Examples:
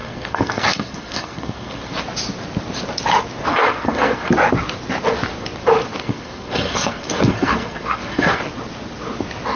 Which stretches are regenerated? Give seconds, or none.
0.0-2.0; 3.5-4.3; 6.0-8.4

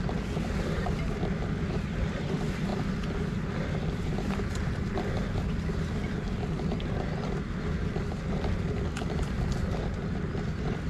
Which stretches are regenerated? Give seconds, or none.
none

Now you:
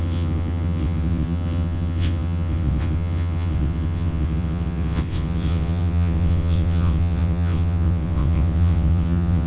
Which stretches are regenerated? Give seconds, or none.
0.0-9.5